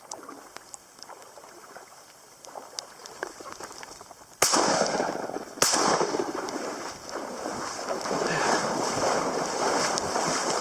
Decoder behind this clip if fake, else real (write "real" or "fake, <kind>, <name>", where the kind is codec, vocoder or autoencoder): fake, vocoder, BigVGAN v2